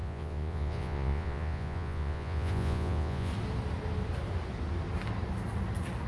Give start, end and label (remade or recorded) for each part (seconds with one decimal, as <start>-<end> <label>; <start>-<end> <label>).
0.0-3.3 remade; 3.3-6.1 recorded